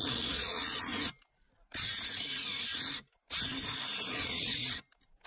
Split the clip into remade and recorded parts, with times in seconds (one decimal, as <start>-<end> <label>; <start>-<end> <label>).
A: 0.0-0.9 remade; 0.9-4.1 recorded; 4.1-4.6 remade; 4.6-5.3 recorded